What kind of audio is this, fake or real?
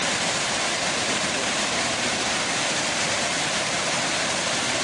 fake